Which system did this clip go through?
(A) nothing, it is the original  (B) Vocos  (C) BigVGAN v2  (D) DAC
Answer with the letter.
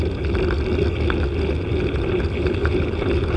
A